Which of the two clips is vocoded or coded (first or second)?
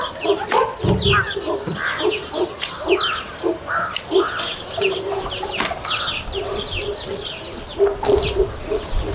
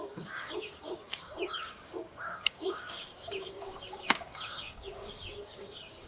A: second